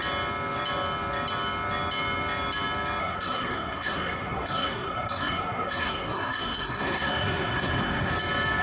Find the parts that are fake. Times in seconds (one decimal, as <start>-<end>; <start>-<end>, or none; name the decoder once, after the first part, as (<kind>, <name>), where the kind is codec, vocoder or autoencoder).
3.0-8.1 (codec, SNAC)